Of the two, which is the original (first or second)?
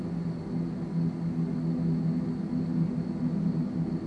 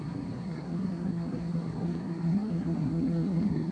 first